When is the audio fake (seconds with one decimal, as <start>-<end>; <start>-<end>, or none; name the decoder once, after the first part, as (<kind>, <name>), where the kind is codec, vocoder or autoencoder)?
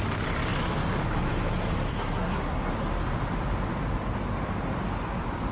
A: 1.9-2.7 (codec, SNAC)